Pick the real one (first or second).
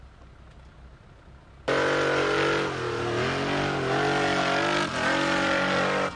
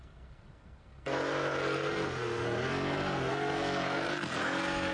first